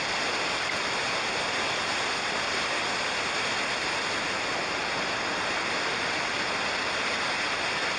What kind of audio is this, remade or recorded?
recorded